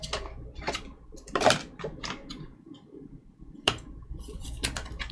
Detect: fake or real fake